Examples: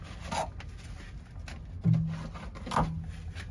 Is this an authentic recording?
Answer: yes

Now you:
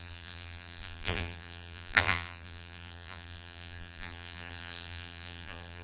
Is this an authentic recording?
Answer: no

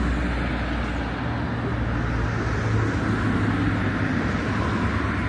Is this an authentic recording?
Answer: yes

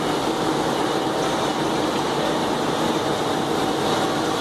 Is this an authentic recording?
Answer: yes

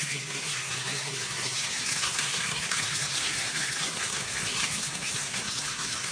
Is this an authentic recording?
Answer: no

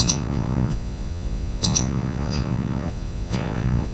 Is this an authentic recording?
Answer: no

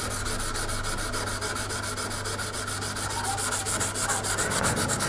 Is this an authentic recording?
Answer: yes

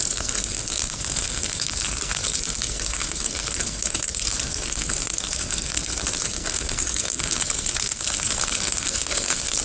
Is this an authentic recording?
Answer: no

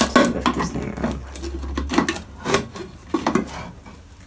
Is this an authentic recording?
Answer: yes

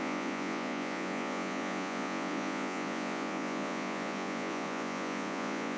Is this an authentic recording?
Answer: no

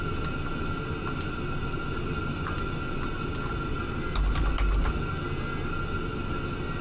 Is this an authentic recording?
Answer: yes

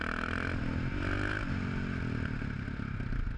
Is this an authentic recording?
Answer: yes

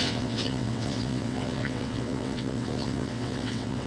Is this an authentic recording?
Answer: no